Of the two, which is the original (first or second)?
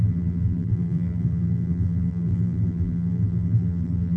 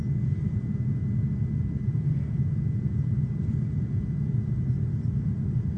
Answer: second